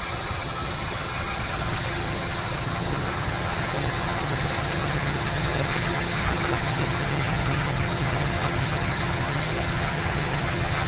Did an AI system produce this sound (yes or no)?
yes